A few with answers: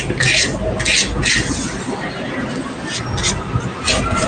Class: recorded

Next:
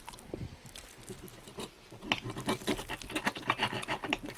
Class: recorded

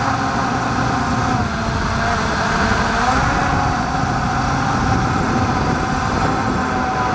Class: recorded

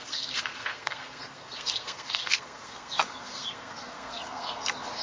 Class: remade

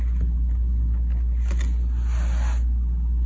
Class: recorded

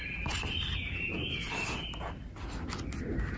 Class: recorded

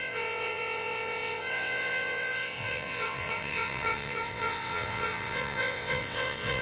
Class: remade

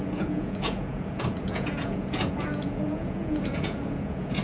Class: remade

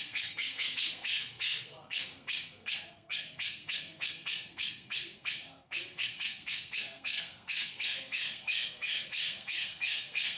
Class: remade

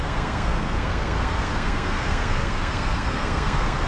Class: remade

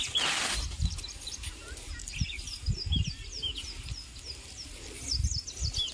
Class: recorded